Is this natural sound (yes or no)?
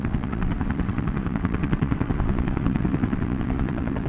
no